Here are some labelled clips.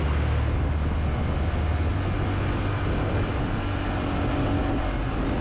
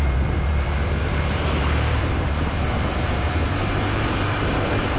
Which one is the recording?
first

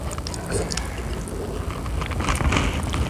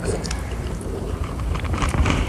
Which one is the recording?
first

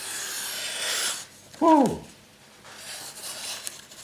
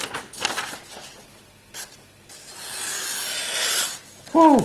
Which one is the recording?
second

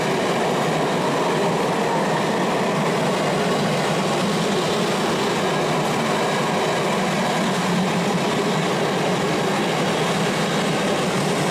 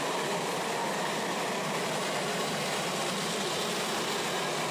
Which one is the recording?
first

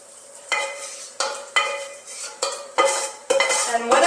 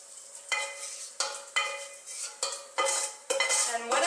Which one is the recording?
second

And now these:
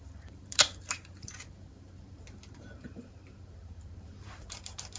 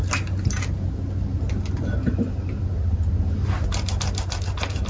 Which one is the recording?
second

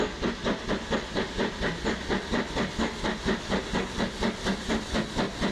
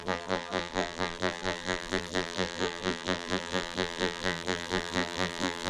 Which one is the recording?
first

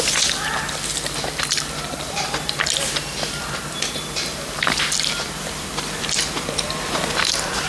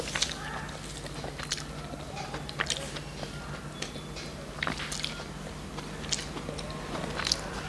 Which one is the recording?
second